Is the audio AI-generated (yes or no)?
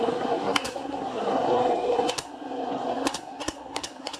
yes